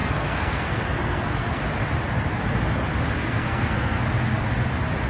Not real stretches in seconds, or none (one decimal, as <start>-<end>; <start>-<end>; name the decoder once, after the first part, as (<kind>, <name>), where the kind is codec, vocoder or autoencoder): 0.0-1.6 (codec, SNAC); 3.2-4.0